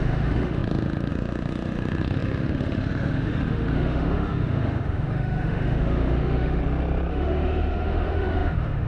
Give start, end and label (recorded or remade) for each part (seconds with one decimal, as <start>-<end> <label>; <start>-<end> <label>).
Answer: 0.0-6.6 remade; 6.6-7.1 recorded; 7.1-8.9 remade